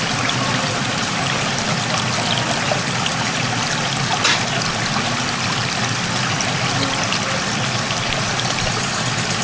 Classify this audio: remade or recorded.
recorded